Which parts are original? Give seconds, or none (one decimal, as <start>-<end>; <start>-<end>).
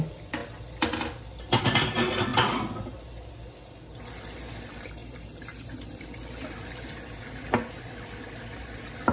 0.0-9.1